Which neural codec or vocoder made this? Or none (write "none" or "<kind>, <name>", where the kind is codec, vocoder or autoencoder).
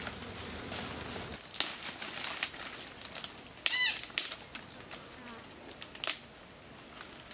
none